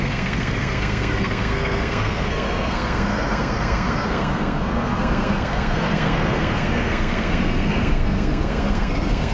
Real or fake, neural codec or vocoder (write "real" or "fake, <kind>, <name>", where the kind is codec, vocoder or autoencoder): fake, codec, SNAC